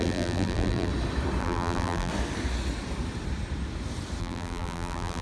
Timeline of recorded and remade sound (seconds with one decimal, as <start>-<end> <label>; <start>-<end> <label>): 0.0-0.9 remade; 0.9-1.4 recorded; 1.4-2.1 remade; 2.1-4.2 recorded; 4.2-5.2 remade